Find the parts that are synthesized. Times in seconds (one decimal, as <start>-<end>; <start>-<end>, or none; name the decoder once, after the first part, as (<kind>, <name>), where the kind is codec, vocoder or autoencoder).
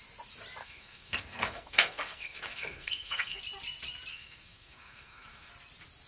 0.6-3.4 (codec, SNAC); 4.1-5.5